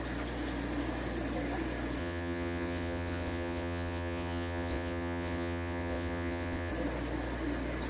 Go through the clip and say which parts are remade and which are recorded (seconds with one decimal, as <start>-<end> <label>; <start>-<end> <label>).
0.0-2.0 recorded; 2.0-6.7 remade; 6.7-7.9 recorded